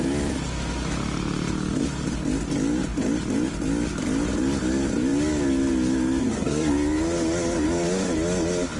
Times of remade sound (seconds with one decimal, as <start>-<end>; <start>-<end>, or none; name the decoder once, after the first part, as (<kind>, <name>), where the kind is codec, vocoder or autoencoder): 6.2-6.7 (codec, SNAC)